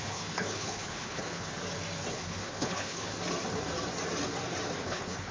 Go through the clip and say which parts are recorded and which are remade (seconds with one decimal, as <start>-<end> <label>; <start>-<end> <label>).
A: 0.0-1.5 remade; 1.5-2.1 recorded; 2.1-3.1 remade; 3.1-4.8 recorded; 4.8-5.3 remade